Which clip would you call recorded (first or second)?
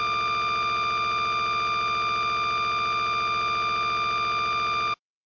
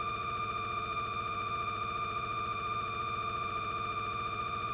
first